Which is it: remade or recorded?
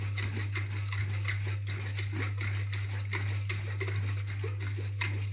recorded